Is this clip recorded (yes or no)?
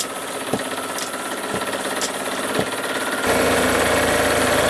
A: yes